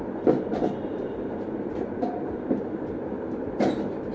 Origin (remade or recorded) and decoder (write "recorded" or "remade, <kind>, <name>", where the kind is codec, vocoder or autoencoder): recorded